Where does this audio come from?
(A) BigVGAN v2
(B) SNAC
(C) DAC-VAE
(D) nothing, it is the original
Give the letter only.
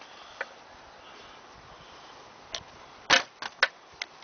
D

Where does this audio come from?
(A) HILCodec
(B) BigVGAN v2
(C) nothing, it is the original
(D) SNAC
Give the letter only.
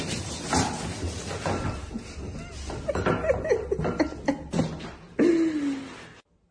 C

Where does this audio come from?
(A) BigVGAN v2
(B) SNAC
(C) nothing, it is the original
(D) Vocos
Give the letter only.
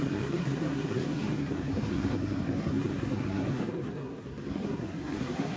B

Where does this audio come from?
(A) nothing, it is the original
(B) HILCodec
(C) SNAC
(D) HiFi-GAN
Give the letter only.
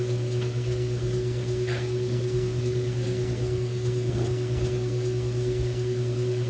C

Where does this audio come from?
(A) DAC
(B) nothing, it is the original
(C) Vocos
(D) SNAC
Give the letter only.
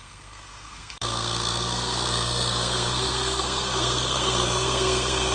D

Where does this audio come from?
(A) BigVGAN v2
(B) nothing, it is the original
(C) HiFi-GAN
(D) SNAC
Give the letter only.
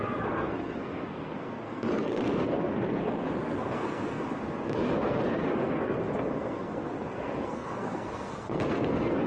D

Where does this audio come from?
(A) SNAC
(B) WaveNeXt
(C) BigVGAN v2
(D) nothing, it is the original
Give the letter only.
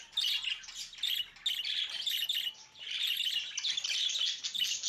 D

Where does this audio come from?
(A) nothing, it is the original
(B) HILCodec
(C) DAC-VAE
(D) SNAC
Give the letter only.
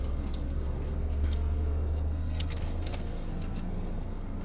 D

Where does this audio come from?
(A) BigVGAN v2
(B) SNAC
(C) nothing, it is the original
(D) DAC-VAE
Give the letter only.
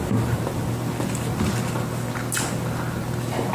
C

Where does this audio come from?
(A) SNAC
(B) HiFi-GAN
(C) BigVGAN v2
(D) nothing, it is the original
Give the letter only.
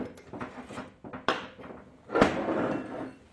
D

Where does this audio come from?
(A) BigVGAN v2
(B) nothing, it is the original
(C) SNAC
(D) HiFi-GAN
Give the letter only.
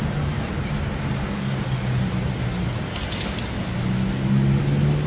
B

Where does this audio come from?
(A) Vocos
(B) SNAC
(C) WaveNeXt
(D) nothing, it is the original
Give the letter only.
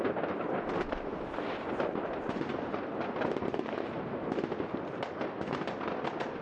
D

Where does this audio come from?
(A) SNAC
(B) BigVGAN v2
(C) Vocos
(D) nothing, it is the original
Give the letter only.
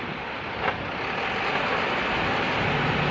D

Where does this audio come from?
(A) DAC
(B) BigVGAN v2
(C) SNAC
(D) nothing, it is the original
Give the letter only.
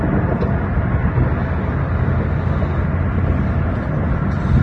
D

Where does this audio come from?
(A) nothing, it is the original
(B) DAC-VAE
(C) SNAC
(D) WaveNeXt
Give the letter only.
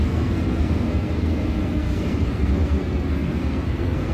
C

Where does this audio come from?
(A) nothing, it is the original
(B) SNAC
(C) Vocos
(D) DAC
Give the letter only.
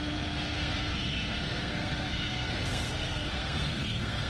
B